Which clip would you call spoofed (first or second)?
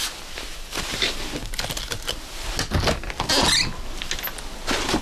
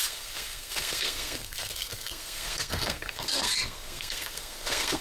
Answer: second